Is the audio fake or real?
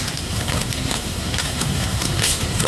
fake